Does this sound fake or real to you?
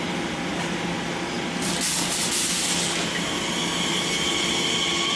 real